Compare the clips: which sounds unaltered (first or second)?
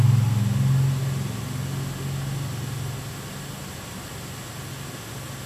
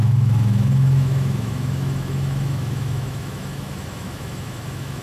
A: first